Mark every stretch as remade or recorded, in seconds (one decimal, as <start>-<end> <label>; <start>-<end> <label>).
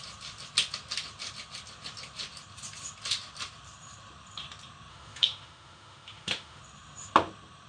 0.0-4.9 recorded; 4.9-6.6 remade; 6.6-7.7 recorded